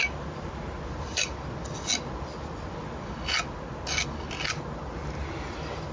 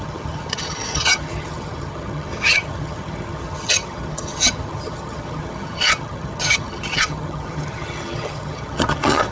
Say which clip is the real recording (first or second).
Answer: first